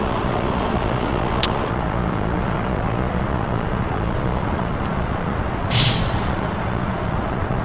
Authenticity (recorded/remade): remade